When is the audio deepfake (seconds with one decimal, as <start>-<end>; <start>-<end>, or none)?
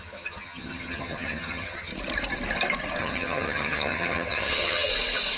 0.0-1.9; 3.0-4.9